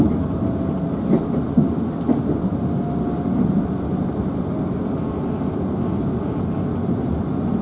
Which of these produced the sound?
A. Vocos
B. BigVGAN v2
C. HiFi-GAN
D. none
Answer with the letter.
D